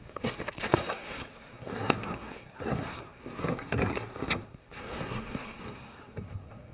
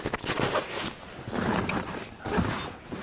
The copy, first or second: first